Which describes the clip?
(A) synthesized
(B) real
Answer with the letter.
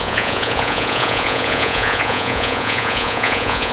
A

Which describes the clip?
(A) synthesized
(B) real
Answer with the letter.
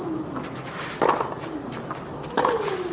B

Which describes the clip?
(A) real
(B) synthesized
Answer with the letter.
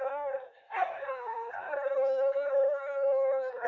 B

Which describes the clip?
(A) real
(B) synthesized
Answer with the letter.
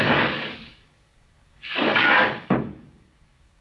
B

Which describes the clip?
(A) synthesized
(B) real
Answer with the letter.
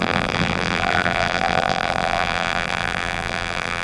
A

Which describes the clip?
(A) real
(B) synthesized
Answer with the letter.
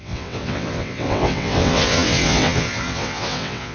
B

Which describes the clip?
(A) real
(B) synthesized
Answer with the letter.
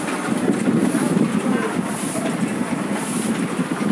A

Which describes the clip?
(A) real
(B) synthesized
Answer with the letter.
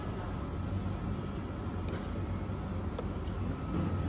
A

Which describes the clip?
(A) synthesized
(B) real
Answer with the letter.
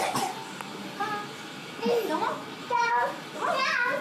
B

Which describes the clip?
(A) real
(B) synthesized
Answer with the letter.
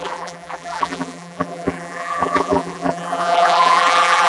B